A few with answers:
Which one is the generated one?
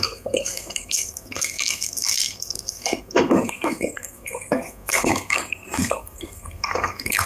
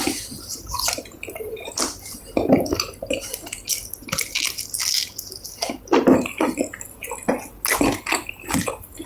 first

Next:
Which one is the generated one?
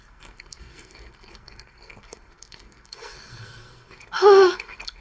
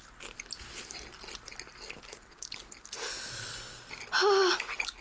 first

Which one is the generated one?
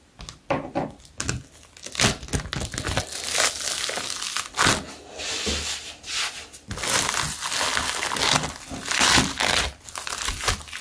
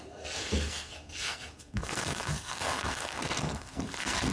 second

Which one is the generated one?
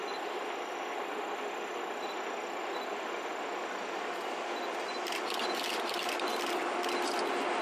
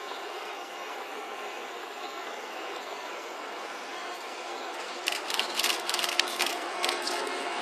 second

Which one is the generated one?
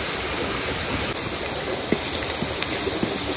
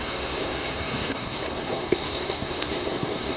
second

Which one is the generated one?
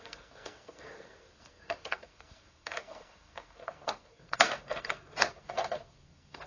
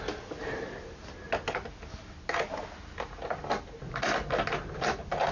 first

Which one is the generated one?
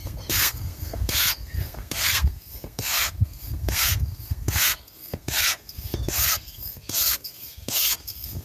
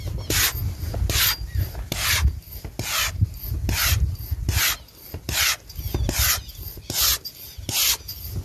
first